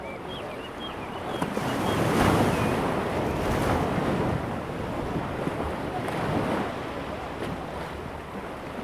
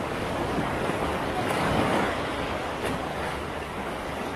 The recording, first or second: first